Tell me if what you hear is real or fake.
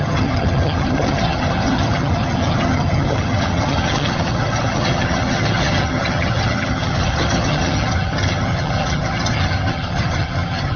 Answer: fake